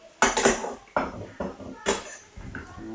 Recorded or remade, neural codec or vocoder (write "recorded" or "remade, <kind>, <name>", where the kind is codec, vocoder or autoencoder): recorded